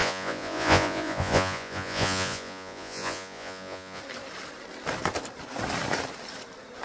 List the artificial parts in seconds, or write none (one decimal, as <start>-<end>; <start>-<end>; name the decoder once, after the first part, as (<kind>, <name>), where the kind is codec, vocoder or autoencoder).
0.0-4.0 (vocoder, Vocos)